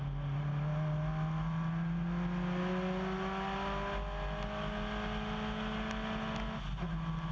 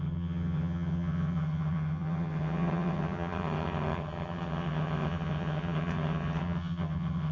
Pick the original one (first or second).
first